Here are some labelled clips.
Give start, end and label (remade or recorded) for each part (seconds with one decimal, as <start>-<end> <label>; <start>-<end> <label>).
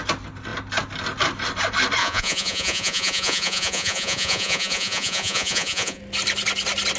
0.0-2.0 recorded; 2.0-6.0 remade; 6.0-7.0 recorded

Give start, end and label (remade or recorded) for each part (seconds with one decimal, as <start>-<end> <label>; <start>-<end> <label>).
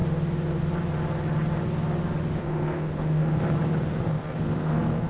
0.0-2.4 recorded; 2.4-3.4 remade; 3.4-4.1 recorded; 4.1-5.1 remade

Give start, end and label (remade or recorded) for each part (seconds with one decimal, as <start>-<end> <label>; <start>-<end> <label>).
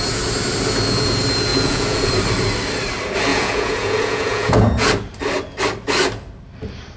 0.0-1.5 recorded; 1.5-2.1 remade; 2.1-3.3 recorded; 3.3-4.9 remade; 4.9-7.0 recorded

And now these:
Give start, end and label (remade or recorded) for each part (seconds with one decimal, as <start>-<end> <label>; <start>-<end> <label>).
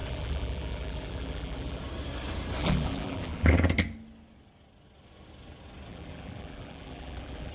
0.0-1.8 remade; 1.8-2.6 recorded; 2.6-3.5 remade; 3.5-5.9 recorded; 5.9-7.5 remade